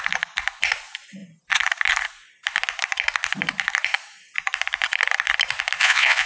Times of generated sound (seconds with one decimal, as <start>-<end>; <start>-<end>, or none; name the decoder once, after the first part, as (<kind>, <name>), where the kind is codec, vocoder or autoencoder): 5.8-6.3 (vocoder, Vocos)